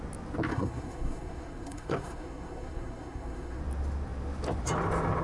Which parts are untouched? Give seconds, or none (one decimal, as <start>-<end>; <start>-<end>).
0.0-0.5; 3.6-5.2